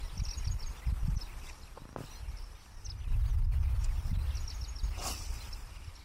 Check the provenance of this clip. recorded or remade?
recorded